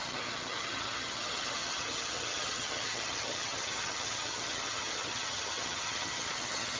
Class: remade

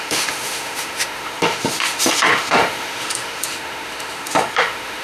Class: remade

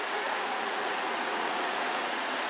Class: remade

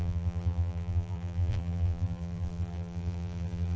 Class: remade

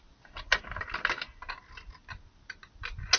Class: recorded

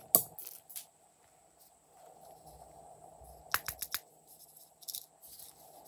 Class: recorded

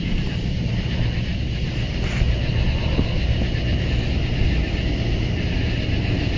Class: recorded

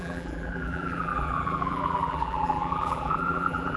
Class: remade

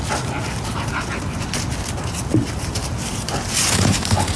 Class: recorded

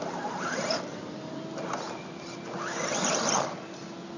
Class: recorded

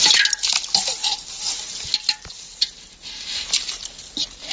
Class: recorded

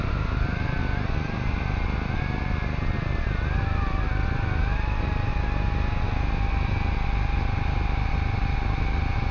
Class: recorded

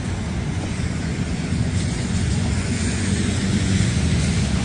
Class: remade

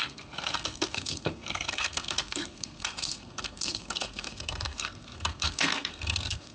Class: remade